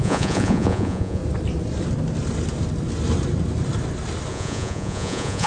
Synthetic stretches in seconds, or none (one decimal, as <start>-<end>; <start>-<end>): 0.0-1.2; 4.3-5.5